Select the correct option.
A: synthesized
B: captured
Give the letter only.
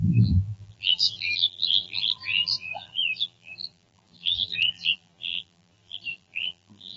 A